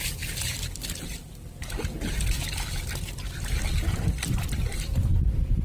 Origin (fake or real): real